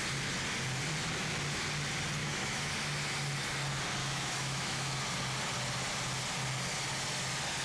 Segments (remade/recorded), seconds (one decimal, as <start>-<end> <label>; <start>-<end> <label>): 0.0-2.2 recorded; 2.2-2.7 remade; 2.7-4.0 recorded; 4.0-5.0 remade; 5.0-7.6 recorded